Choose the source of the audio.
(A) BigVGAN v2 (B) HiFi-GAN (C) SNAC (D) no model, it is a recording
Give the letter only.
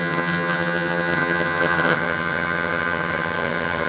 B